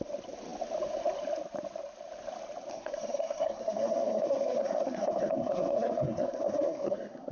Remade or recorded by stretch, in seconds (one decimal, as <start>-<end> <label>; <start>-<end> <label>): 0.0-2.7 recorded; 2.7-7.3 remade